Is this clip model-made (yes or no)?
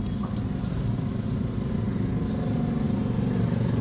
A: no